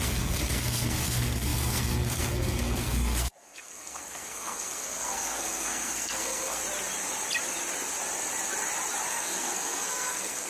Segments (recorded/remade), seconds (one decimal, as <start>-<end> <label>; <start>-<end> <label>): 0.0-6.6 remade; 6.6-9.1 recorded; 9.1-10.5 remade